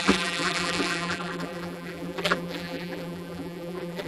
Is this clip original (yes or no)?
no